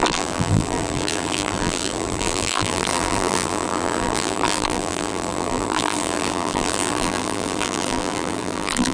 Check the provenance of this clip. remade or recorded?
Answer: remade